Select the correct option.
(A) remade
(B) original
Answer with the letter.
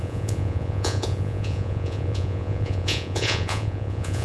A